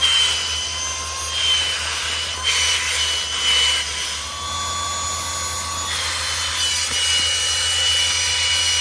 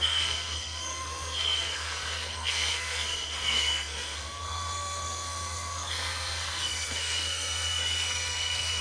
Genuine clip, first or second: first